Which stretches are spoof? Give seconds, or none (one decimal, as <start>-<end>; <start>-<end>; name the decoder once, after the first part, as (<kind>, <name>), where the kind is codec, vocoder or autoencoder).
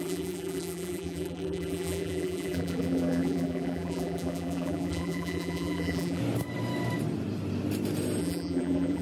0.0-6.2 (vocoder, BigVGAN v2); 8.2-9.0